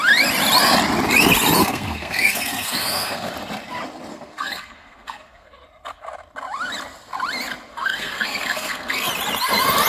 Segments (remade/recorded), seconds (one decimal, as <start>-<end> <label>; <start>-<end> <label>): 0.0-1.6 recorded; 1.6-3.3 remade; 3.3-4.1 recorded; 4.1-5.5 remade; 5.5-7.7 recorded; 7.7-9.1 remade; 9.1-9.9 recorded